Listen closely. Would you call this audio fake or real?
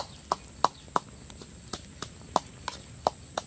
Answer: real